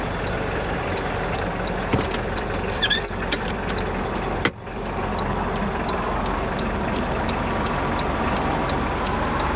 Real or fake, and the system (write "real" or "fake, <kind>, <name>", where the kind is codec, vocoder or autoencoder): real